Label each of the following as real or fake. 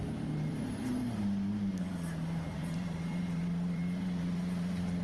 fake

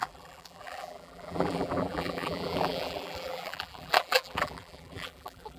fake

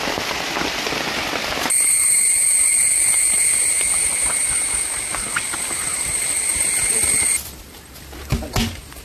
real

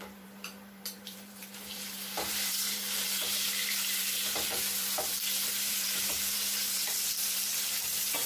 fake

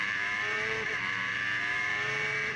fake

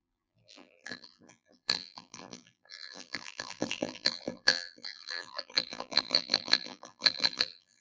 fake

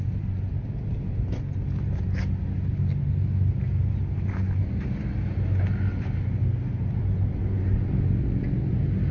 real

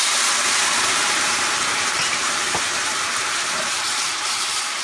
fake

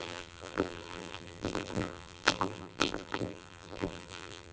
fake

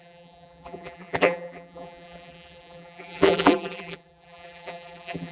fake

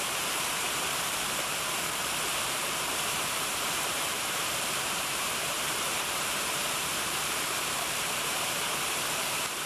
fake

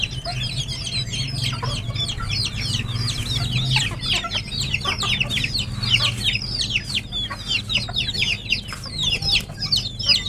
real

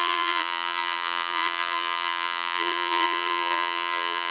fake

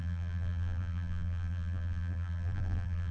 fake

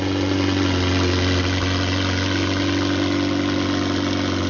real